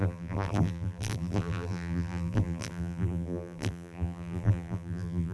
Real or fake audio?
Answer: fake